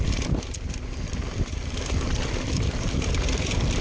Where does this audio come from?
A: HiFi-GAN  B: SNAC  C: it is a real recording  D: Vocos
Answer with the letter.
C